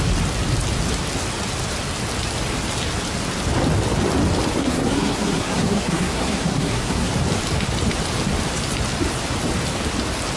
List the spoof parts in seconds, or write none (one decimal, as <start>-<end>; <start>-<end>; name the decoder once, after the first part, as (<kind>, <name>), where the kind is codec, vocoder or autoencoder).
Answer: 4.6-7.1 (codec, SNAC)